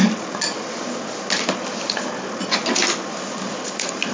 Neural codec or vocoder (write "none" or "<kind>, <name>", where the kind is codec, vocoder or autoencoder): none